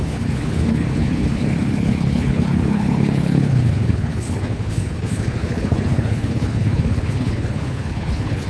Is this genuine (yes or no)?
no